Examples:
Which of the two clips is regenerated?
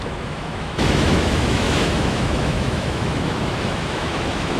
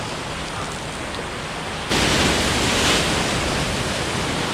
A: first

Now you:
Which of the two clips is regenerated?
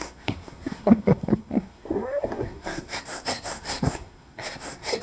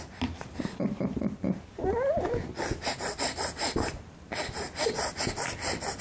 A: first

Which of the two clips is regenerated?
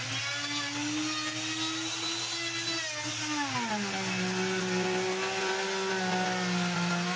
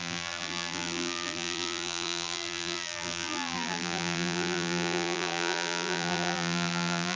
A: second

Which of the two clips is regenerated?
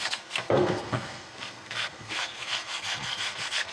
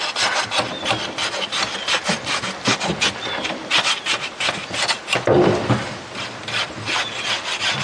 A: first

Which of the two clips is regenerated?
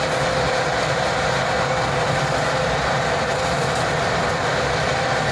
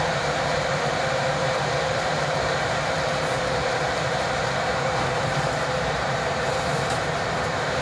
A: second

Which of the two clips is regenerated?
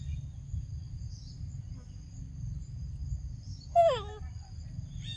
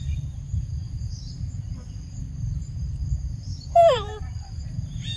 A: second